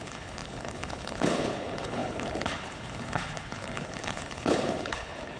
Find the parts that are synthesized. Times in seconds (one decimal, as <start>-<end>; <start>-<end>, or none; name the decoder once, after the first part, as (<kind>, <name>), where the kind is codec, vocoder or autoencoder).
0.0-5.4 (codec, HILCodec)

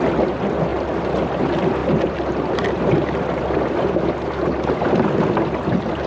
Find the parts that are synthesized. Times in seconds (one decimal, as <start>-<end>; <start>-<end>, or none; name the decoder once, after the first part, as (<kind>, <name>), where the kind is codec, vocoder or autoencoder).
0.7-1.4 (vocoder, BigVGAN v2); 1.8-3.7

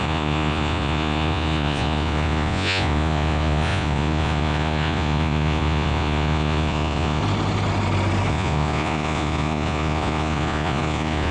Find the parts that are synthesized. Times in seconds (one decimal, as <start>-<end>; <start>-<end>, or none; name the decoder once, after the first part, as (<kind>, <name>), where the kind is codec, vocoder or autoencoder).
0.0-7.2 (vocoder, Vocos); 8.3-11.3

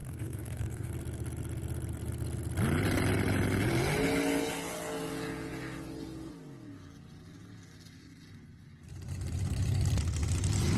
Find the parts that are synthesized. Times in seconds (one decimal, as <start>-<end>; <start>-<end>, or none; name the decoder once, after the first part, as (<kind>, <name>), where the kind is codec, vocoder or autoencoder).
0.0-0.9 (codec, DAC)

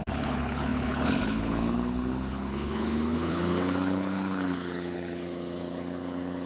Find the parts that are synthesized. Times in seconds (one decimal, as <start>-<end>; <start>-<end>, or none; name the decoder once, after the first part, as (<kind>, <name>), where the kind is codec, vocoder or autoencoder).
0.0-6.5 (codec, HILCodec)

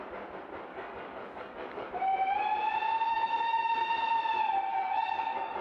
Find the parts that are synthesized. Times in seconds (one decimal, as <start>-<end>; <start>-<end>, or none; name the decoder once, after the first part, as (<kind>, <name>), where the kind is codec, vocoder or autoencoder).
0.7-1.9 (codec, DAC); 3.1-3.9; 4.7-5.6